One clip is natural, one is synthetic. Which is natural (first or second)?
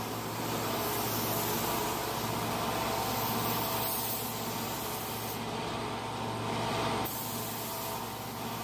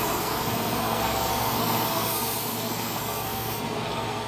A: first